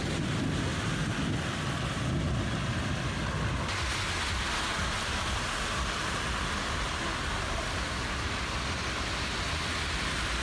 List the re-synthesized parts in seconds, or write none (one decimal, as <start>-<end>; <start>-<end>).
none